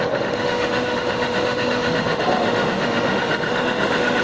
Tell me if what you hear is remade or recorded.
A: remade